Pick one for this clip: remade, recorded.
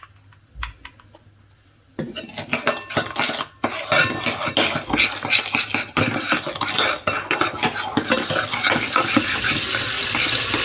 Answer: recorded